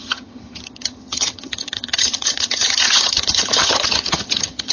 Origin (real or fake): fake